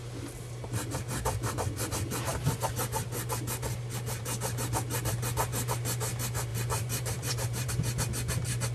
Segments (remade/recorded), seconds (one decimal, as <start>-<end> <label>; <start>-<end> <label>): 0.0-6.5 recorded; 6.5-7.7 remade; 7.7-8.7 recorded

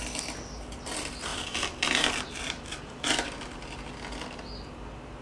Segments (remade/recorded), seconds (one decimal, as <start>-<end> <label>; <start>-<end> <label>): 0.0-5.2 recorded

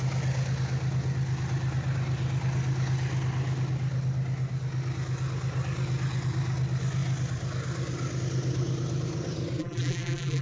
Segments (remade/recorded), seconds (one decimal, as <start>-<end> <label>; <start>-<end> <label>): 0.0-9.6 recorded; 9.6-10.4 remade